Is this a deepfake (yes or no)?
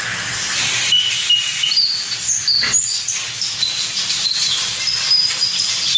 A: no